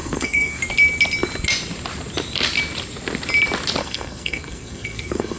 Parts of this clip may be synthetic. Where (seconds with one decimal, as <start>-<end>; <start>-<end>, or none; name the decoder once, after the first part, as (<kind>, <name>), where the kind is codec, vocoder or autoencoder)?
0.0-0.6 (codec, SNAC); 3.8-5.4